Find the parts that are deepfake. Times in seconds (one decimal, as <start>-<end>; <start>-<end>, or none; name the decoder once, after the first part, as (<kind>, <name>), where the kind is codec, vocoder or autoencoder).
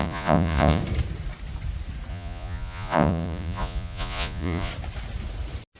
0.0-0.8 (vocoder, Vocos); 2.1-4.7